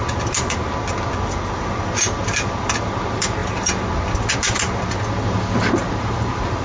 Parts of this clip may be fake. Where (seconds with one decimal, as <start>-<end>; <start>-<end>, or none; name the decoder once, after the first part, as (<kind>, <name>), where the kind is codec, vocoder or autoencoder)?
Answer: none

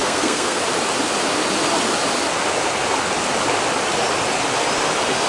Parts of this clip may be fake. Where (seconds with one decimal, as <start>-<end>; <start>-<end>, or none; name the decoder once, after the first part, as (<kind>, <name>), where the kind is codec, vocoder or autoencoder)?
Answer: 0.0-0.6 (codec, SNAC)

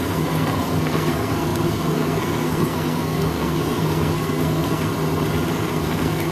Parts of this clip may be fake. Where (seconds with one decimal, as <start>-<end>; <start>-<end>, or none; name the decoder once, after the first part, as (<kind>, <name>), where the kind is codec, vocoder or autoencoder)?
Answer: 0.0-4.9 (codec, SNAC); 5.5-6.3

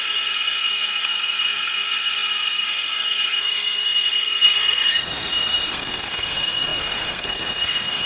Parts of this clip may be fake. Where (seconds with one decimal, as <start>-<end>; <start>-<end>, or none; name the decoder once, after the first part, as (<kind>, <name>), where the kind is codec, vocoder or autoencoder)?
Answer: 0.0-8.1 (codec, SNAC)